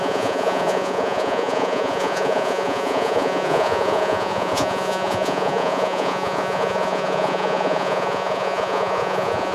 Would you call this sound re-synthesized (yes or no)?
yes